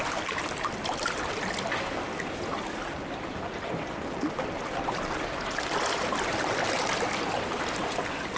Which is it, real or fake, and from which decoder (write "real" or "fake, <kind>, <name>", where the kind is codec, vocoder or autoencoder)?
real